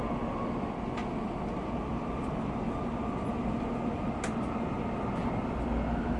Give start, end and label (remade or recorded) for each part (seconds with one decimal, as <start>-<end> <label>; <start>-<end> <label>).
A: 0.0-6.2 recorded